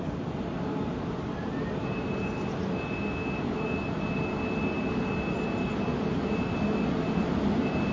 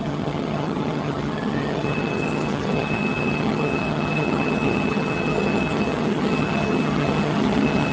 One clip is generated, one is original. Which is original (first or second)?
first